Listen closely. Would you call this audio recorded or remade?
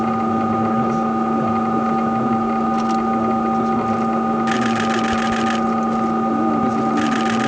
recorded